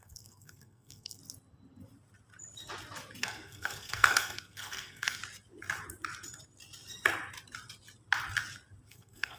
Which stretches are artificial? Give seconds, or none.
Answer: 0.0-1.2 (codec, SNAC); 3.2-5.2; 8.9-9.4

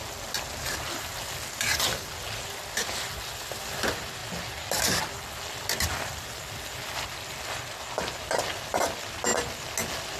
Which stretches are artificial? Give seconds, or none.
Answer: none

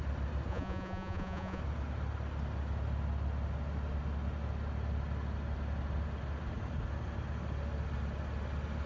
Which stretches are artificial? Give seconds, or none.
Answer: 0.5-1.6 (vocoder, Vocos)

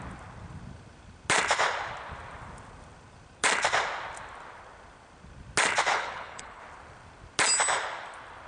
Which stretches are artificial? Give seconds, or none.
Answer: 5.9-6.6 (codec, HILCodec)

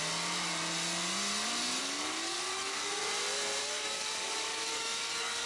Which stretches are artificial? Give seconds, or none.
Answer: 1.8-3.0 (codec, DAC); 3.6-5.5